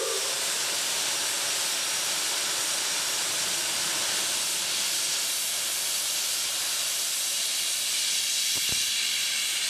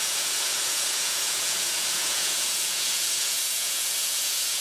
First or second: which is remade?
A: second